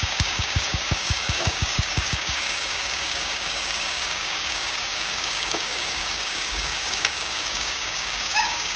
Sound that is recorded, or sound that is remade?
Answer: remade